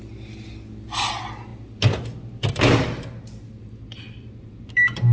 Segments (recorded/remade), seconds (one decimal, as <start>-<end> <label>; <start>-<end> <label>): 0.0-5.1 recorded